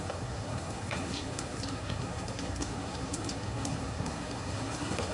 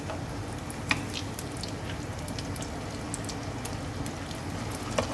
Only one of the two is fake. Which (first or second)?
first